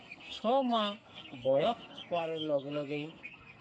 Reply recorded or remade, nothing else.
remade